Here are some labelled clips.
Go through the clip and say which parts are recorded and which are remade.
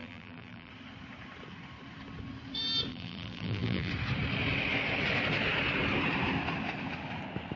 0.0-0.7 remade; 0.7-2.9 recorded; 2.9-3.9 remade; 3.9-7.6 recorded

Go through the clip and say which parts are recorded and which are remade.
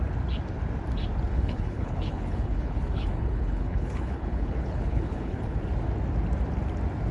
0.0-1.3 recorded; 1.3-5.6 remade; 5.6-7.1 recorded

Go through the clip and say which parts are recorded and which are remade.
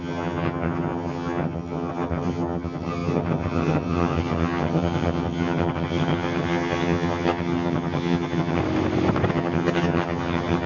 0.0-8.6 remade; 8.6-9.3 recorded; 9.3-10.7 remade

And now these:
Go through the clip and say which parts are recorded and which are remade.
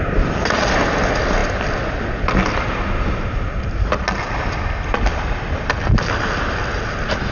0.0-7.3 recorded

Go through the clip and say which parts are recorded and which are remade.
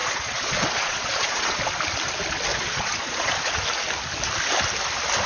0.0-1.6 remade; 1.6-2.5 recorded; 2.5-3.6 remade; 3.6-5.3 recorded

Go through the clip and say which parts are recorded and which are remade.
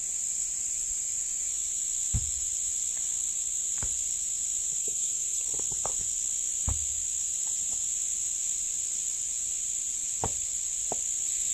0.0-4.8 recorded; 4.8-5.4 remade; 5.4-11.5 recorded